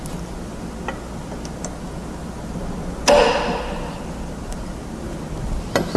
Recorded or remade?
recorded